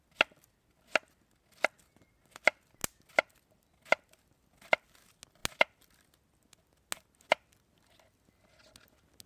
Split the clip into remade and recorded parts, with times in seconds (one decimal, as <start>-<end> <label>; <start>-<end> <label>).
0.0-9.3 recorded